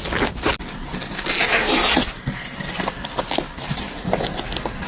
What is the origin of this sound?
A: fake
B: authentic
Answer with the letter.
B